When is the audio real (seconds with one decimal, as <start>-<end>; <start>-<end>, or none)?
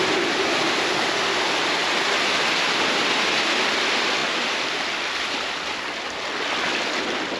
0.0-7.4